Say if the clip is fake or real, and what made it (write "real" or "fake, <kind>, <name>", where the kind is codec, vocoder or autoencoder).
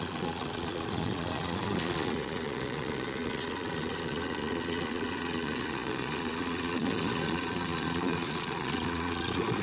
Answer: fake, vocoder, Vocos